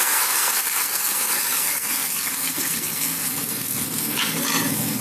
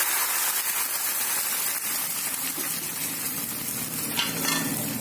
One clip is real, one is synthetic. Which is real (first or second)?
second